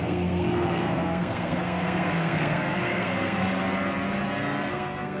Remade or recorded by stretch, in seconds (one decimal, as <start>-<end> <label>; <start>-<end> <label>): 0.0-3.6 remade; 3.6-4.7 recorded; 4.7-5.2 remade